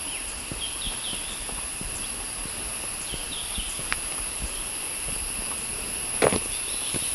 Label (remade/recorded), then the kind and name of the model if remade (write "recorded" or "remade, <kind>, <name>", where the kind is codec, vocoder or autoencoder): recorded